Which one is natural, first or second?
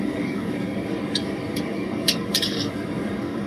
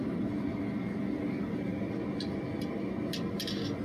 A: second